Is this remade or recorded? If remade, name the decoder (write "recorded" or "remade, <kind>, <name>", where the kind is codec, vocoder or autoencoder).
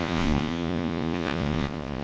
remade, vocoder, Vocos